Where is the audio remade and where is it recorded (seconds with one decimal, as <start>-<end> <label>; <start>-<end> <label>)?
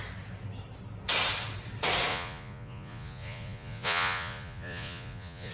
0.0-2.1 recorded; 2.1-5.5 remade